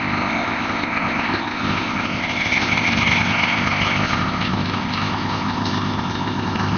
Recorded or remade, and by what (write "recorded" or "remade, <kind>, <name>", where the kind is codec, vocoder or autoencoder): remade, codec, ZipCodec